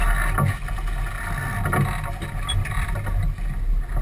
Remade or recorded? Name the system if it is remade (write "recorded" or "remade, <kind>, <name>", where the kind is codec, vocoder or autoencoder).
recorded